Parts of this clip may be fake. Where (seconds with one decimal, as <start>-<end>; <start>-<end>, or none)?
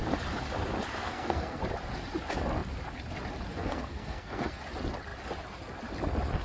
0.9-1.6; 3.5-4.6